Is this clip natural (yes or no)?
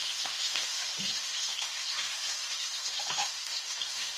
no